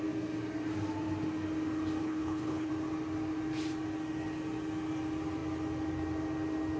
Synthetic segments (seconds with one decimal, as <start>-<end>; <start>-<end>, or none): 2.0-2.7